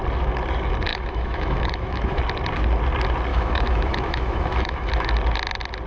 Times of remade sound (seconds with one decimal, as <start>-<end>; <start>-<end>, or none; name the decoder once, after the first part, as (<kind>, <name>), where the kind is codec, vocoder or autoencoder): 0.9-2.2 (autoencoder, DAC-VAE); 3.3-4.9